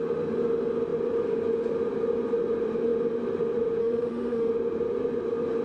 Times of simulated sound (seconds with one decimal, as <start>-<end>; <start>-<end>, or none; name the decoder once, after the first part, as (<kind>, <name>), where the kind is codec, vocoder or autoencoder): 3.8-4.5 (autoencoder, DAC-VAE)